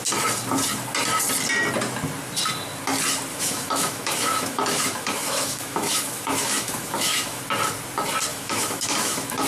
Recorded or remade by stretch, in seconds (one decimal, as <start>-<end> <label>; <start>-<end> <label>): 0.0-3.3 recorded; 3.3-7.4 remade; 7.4-8.3 recorded; 8.3-9.5 remade